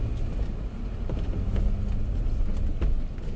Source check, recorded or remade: recorded